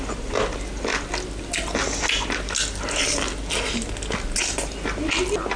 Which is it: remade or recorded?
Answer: recorded